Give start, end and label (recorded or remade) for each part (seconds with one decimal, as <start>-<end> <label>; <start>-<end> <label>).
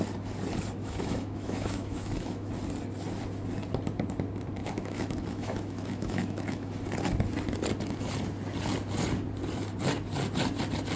0.0-0.8 recorded; 0.8-2.5 remade; 2.5-4.6 recorded; 4.6-6.7 remade; 6.7-11.0 recorded